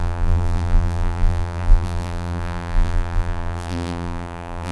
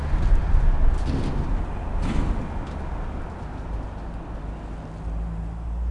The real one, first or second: second